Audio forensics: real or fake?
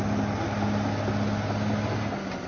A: real